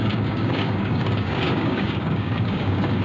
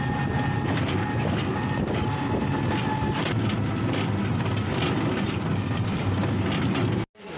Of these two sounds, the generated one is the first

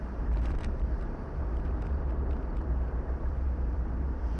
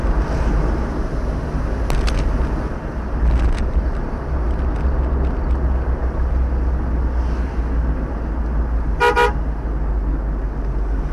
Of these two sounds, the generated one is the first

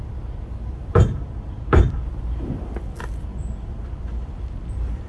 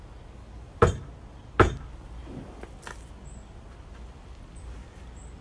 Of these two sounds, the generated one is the first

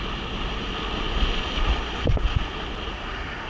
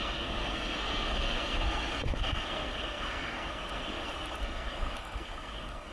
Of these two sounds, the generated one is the second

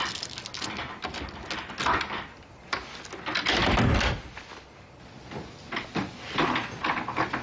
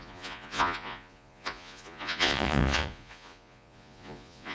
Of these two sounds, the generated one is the second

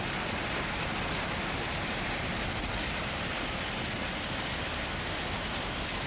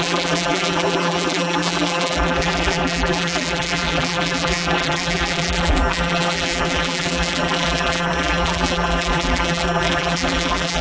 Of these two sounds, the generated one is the second